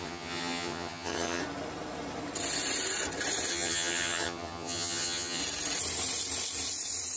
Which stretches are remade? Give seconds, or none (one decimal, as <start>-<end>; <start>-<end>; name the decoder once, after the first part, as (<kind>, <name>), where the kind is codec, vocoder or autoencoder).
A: 0.0-1.4 (vocoder, HiFi-GAN); 3.5-5.4